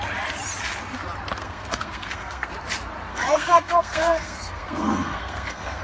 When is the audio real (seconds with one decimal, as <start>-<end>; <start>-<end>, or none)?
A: 0.0-1.4; 2.5-3.1